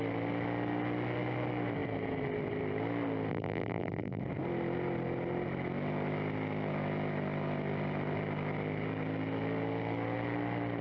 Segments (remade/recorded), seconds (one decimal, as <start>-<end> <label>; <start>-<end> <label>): 0.0-3.3 recorded; 3.3-4.2 remade; 4.2-10.8 recorded